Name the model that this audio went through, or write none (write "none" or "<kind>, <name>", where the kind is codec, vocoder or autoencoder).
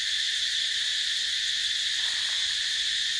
none